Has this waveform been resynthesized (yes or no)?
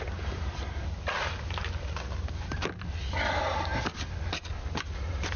no